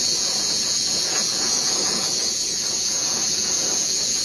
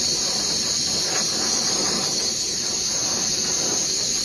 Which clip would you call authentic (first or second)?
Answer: second